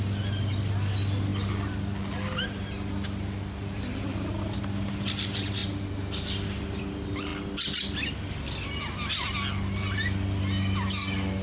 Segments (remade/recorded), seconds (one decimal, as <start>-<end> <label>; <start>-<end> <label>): 0.0-11.4 recorded